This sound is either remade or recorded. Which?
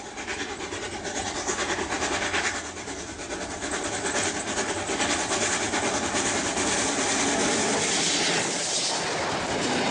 recorded